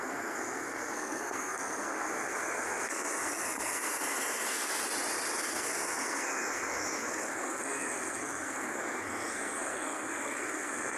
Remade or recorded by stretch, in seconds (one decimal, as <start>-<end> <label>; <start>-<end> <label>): 0.0-4.8 remade; 4.8-5.4 recorded; 5.4-11.0 remade